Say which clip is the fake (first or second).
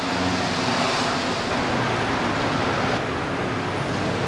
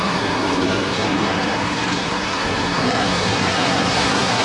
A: second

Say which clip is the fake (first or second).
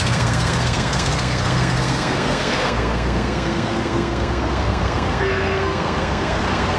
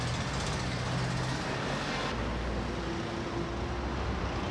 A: first